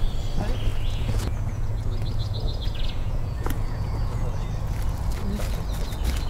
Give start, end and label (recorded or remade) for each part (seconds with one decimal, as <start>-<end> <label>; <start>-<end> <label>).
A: 0.0-0.7 recorded; 0.7-4.5 remade; 4.5-6.3 recorded